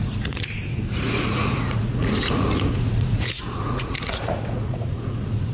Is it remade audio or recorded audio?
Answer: remade